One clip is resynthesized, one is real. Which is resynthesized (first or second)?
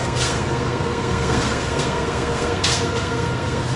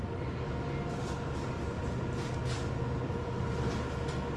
first